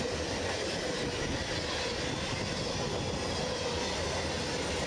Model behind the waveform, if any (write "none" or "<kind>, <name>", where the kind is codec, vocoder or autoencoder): none